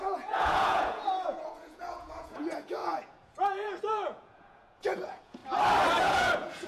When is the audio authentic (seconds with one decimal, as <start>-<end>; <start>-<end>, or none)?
5.4-6.0